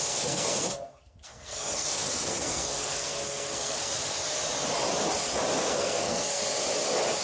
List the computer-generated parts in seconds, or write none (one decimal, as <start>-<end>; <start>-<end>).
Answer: 0.0-3.9; 5.6-6.4